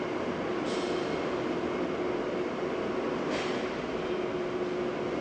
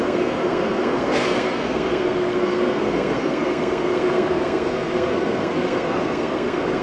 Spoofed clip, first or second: second